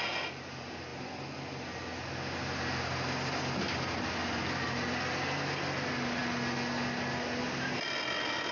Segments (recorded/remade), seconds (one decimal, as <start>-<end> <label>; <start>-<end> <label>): 0.0-8.5 recorded